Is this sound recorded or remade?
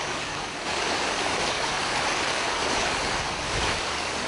remade